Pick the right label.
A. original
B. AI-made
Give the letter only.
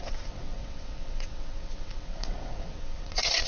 B